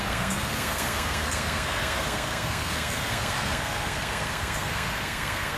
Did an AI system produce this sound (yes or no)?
yes